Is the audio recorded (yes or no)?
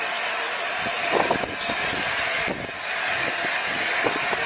yes